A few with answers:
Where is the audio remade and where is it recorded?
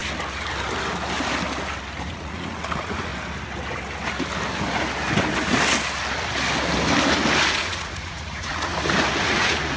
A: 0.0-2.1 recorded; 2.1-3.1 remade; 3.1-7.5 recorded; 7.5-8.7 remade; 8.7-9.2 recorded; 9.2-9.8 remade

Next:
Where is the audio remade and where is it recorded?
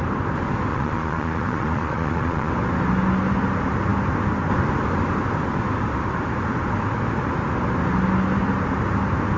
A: 0.0-0.7 recorded; 0.7-2.5 remade; 2.5-9.4 recorded